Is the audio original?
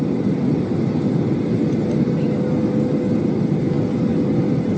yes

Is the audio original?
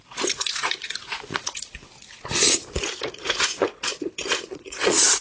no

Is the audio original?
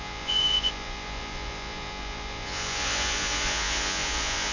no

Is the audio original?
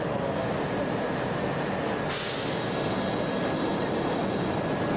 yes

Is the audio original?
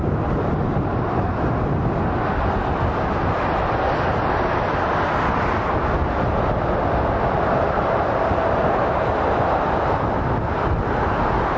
yes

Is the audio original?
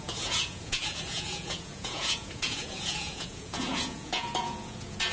no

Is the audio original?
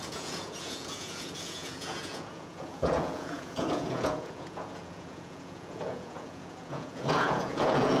no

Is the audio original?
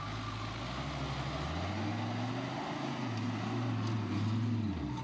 yes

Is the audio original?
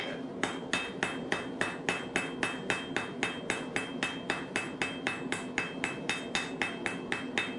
yes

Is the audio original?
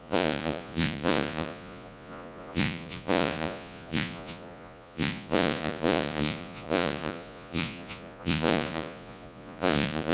no